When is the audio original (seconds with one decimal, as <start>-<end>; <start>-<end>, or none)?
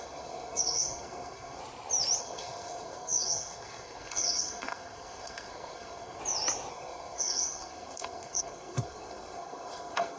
1.6-2.2; 6.2-6.7